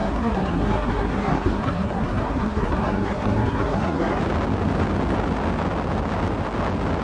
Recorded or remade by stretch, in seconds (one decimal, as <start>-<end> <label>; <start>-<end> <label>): 0.0-4.2 remade; 4.2-7.0 recorded

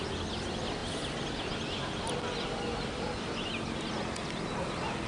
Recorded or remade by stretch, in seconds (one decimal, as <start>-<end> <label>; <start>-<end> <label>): 0.0-5.1 recorded

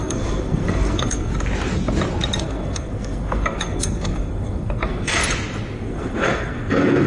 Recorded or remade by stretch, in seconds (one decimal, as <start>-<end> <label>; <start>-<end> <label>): 0.0-1.3 remade; 1.3-2.4 recorded; 2.4-5.2 remade; 5.2-5.8 recorded; 5.8-7.1 remade

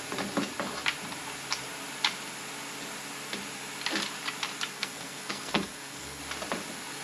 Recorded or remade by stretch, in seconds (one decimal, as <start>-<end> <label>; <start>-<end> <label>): 0.0-4.7 recorded; 4.7-6.2 remade; 6.2-7.0 recorded

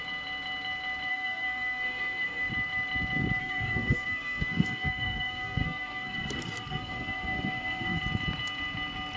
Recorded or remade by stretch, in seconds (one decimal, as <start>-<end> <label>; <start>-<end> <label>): 0.0-1.1 recorded; 1.1-2.5 remade; 2.5-3.4 recorded; 3.4-8.0 remade; 8.0-9.2 recorded

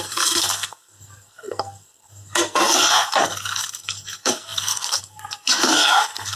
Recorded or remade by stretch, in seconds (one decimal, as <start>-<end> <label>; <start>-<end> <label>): 0.0-6.4 remade

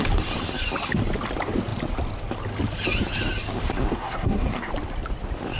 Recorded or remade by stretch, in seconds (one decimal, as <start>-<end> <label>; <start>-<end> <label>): 0.0-3.9 recorded; 3.9-4.7 remade; 4.7-5.6 recorded